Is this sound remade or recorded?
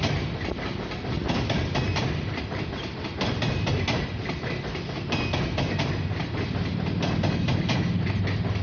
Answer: remade